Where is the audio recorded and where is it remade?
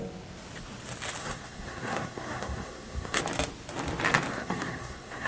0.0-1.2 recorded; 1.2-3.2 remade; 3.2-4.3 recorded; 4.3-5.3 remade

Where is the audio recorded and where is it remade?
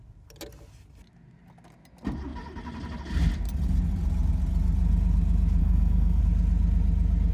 0.0-5.6 recorded; 5.6-6.2 remade; 6.2-7.3 recorded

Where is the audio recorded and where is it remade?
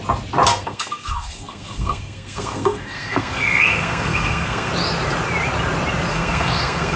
0.0-0.5 recorded; 0.5-4.7 remade; 4.7-6.1 recorded; 6.1-7.0 remade